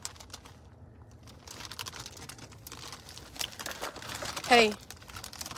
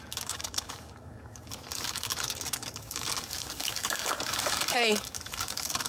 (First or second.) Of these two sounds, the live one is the first